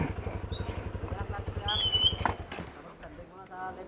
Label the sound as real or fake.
real